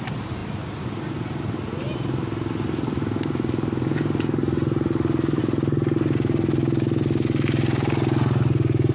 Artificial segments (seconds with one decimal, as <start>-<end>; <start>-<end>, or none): none